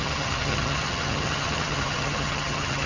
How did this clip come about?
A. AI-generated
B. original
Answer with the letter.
A